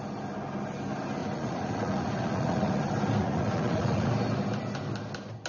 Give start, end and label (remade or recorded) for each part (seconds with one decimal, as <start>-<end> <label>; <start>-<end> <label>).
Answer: 0.0-1.2 recorded; 1.2-2.8 remade; 2.8-3.2 recorded; 3.2-4.1 remade; 4.1-5.5 recorded